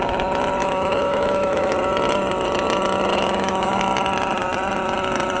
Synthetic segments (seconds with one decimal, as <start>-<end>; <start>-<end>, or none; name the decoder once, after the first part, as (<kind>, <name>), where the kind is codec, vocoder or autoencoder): 0.6-1.7 (autoencoder, DAC-VAE); 3.1-3.8